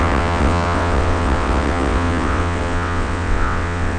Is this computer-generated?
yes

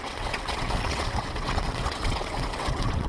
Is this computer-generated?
yes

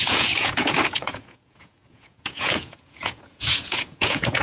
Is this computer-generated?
yes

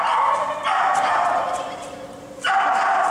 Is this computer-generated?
yes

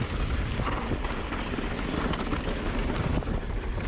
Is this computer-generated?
no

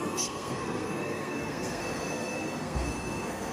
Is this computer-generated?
yes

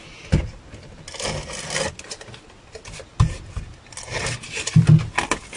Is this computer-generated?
no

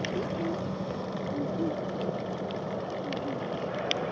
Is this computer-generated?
no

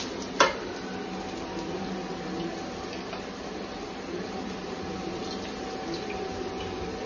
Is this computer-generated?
no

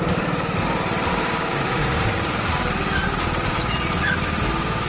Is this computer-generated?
yes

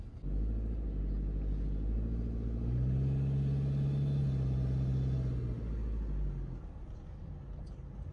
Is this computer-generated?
no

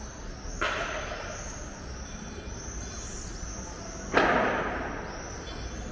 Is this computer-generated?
no